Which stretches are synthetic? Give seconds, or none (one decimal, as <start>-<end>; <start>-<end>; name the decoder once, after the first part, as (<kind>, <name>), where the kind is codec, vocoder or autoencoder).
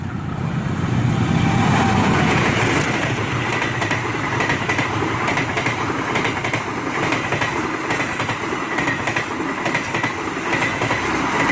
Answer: 2.0-2.6 (vocoder, Vocos)